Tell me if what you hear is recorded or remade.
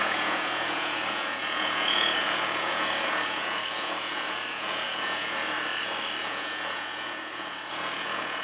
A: remade